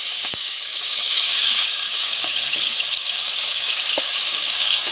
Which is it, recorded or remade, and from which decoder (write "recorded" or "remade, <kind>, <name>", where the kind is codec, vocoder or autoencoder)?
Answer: remade, codec, DAC